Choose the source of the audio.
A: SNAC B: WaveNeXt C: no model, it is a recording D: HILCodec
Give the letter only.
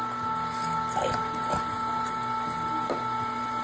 C